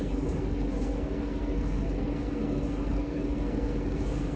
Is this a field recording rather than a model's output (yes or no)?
no